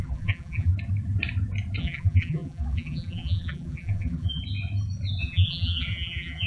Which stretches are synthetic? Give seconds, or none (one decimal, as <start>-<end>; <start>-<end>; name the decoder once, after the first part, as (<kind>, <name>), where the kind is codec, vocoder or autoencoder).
0.0-0.7 (vocoder, BigVGAN v2); 1.8-4.4; 5.2-6.5